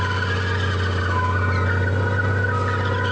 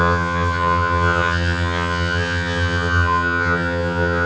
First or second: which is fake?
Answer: second